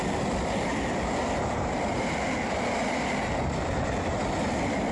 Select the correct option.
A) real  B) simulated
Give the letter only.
A